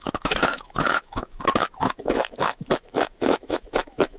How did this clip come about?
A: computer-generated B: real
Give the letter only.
A